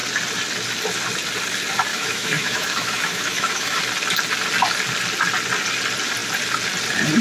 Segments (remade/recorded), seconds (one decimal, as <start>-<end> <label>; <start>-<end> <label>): 0.0-1.9 recorded; 1.9-3.8 remade; 3.8-7.2 recorded